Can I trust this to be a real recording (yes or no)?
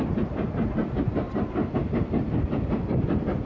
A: no